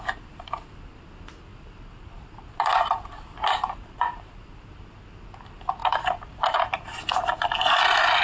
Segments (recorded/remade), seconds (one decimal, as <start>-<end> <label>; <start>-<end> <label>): 0.0-1.5 recorded; 1.5-4.4 remade; 4.4-5.8 recorded; 5.8-6.8 remade; 6.8-8.2 recorded